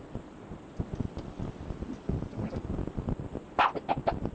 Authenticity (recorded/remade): recorded